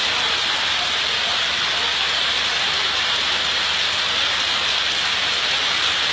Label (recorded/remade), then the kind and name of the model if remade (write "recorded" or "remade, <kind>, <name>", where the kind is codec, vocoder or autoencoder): recorded